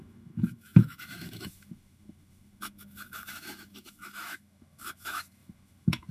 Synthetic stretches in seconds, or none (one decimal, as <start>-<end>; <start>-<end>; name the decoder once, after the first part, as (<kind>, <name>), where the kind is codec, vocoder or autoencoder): 0.0-6.1 (autoencoder, DAC-VAE)